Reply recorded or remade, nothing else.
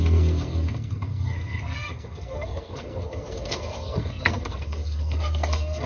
remade